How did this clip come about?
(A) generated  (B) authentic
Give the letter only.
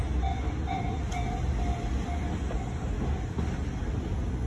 B